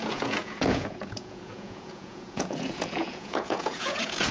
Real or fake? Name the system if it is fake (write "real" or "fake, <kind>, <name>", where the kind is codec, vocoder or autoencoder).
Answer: fake, vocoder, Vocos